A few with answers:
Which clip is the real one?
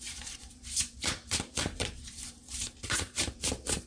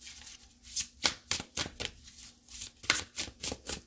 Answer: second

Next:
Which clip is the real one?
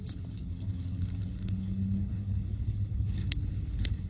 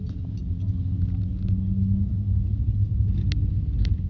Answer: second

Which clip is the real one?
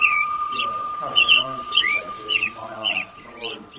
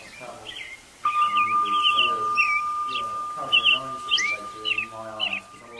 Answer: second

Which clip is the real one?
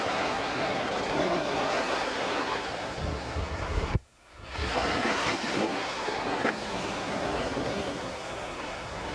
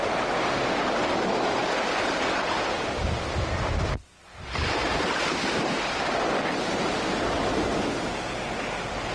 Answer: second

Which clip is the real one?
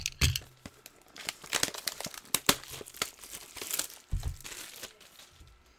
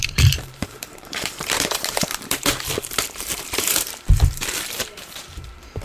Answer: first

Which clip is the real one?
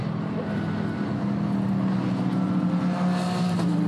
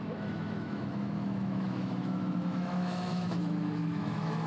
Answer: first